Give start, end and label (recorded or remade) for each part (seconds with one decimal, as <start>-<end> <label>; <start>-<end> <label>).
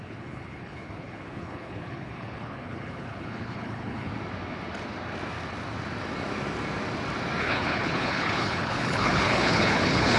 0.0-4.1 remade; 4.1-7.4 recorded; 7.4-10.2 remade